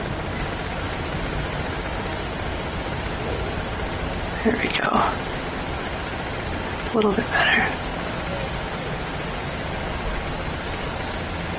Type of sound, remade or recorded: recorded